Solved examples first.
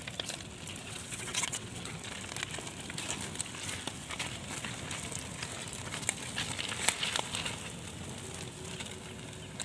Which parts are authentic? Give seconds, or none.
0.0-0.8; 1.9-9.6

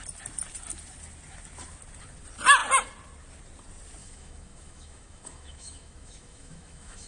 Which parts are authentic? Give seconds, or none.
0.0-4.0

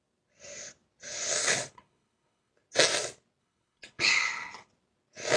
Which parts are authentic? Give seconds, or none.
0.0-1.4; 2.5-3.4; 4.7-5.4

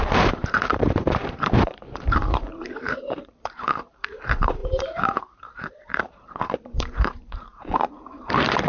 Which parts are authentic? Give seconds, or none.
none